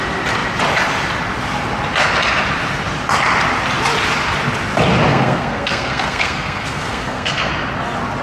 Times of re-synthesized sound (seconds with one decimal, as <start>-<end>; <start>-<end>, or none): 5.1-7.5